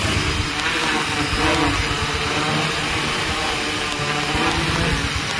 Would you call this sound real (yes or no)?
yes